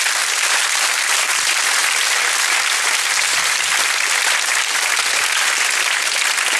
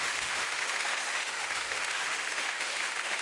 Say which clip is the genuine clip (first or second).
first